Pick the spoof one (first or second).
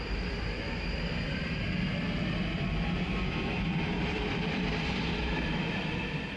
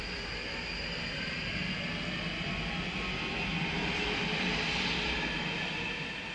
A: first